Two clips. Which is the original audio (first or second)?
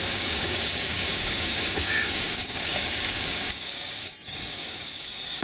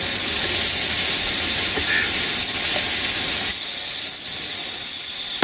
second